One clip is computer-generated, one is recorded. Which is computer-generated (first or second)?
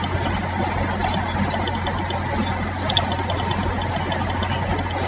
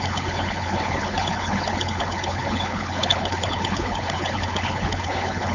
second